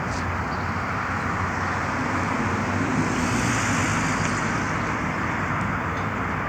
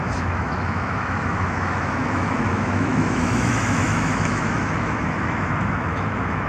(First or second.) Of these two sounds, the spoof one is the second